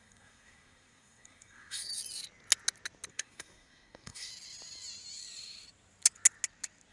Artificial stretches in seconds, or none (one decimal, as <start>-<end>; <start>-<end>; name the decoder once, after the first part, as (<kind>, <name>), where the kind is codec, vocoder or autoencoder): 0.0-1.9 (codec, SNAC); 3.1-4.3